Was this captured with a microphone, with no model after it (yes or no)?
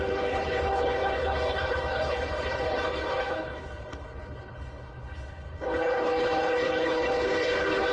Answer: no